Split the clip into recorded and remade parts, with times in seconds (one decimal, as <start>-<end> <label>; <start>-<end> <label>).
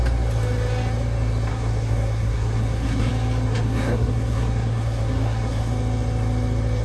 0.0-1.5 recorded; 1.5-3.1 remade; 3.1-3.5 recorded; 3.5-5.7 remade; 5.7-6.8 recorded